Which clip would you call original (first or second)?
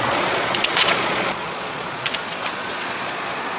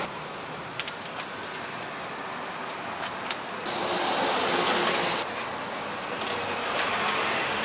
second